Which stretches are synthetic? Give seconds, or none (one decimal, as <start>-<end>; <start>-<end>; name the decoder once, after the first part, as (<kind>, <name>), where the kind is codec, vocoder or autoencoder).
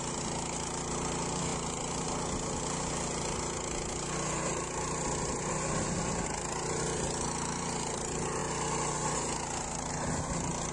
1.5-2.1 (vocoder, BigVGAN v2)